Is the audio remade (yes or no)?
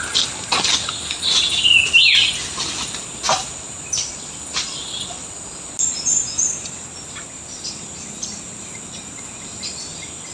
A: no